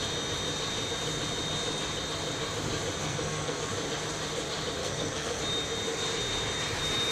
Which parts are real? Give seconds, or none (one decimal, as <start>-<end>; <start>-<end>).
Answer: 0.0-3.0; 3.7-4.8; 5.4-7.1